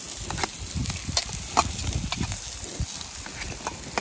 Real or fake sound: real